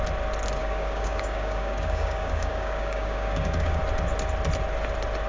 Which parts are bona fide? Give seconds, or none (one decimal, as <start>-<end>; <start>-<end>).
0.0-0.6; 3.8-5.3

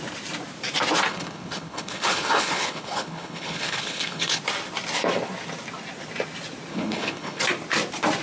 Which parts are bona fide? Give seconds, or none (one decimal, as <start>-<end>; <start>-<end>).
0.0-1.1; 4.4-6.7; 7.4-8.2